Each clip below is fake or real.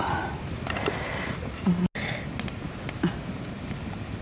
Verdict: real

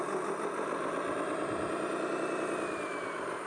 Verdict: real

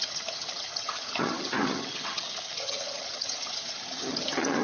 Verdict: fake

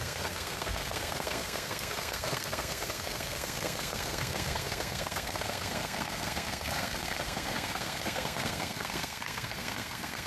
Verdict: fake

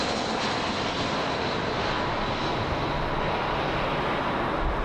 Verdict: real